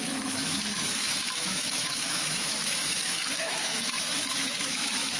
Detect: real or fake fake